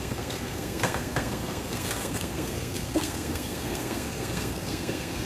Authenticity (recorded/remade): remade